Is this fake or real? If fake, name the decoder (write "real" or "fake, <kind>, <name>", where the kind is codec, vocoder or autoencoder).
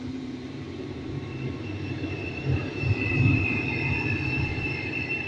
fake, vocoder, BigVGAN v2